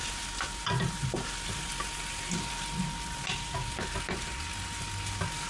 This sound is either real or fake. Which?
real